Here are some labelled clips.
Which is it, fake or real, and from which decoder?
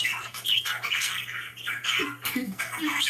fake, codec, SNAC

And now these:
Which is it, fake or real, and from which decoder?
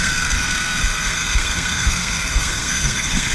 fake, codec, SNAC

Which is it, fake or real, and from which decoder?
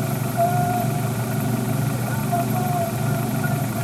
fake, vocoder, BigVGAN v2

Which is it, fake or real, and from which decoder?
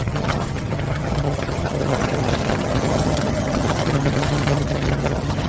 fake, vocoder, HiFi-GAN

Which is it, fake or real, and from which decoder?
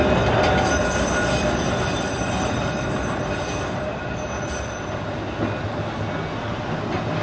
real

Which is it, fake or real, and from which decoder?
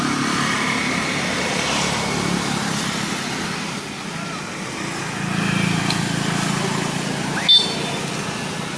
real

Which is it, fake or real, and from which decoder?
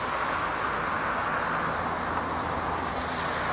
real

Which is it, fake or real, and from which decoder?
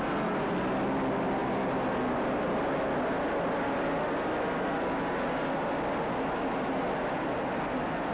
real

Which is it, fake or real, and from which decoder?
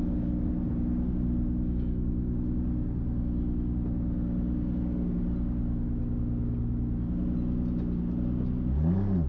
real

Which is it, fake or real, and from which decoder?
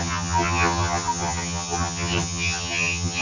fake, vocoder, HiFi-GAN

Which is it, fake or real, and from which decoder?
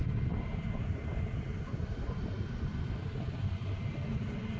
fake, vocoder, BigVGAN v2